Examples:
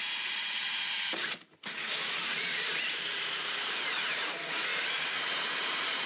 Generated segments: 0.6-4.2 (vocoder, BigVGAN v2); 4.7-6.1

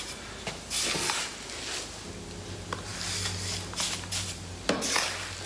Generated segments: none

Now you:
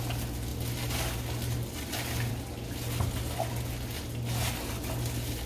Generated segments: none

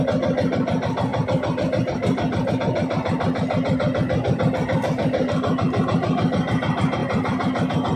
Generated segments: none

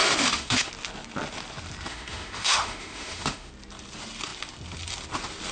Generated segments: 0.0-0.7 (autoencoder, DAC-VAE); 1.9-3.5